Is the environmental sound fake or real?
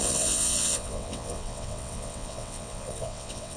fake